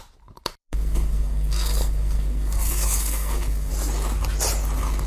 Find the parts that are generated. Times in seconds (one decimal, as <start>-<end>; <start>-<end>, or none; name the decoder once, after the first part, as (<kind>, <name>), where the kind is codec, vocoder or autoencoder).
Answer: 0.6-3.7 (codec, SNAC)